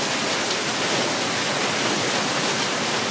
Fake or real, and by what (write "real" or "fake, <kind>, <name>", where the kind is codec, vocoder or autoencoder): real